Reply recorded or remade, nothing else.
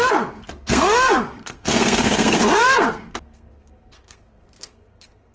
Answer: remade